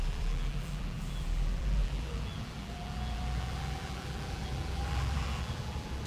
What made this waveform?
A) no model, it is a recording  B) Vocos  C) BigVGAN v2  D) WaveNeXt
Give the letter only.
C